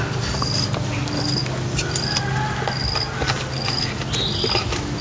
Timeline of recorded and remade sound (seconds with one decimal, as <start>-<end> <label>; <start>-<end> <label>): 0.0-5.0 recorded